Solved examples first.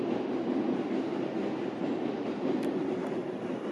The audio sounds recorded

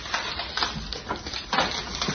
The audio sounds recorded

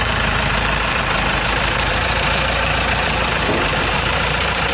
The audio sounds remade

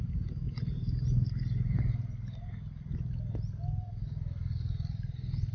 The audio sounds recorded